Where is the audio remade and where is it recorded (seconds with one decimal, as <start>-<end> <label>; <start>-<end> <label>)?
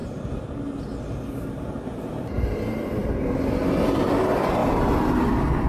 0.0-5.7 recorded